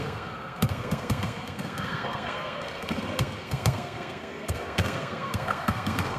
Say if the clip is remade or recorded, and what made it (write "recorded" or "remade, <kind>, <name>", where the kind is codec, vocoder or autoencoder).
remade, codec, SNAC